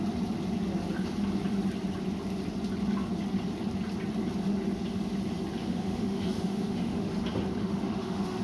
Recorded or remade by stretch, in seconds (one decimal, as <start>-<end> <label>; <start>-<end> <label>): 0.0-5.6 recorded; 5.6-7.1 remade; 7.1-7.6 recorded; 7.6-8.4 remade